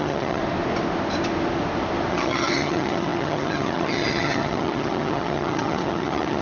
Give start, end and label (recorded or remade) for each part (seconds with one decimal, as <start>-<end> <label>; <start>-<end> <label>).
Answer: 0.0-0.4 remade; 0.4-2.1 recorded; 2.1-6.4 remade